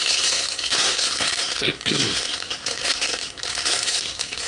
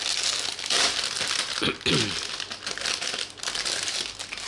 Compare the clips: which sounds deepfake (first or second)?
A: first